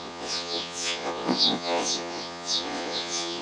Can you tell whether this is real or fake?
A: fake